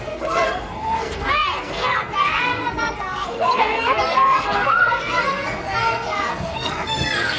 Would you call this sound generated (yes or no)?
yes